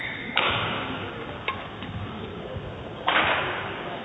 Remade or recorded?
remade